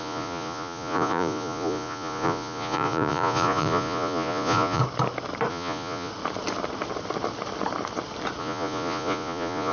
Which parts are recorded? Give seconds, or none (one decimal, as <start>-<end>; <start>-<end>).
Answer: 4.8-5.5; 6.1-8.4